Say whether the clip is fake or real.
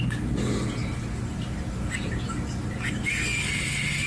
real